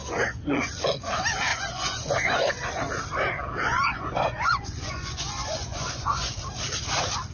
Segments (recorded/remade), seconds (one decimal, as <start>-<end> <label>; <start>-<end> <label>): 0.0-0.7 remade; 0.7-1.5 recorded; 1.5-2.6 remade; 2.6-3.7 recorded; 3.7-6.3 remade; 6.3-7.3 recorded